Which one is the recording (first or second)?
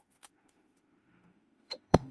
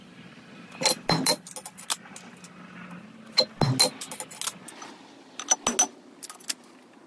second